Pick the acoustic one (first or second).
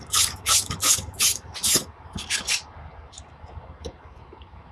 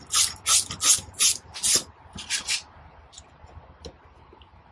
second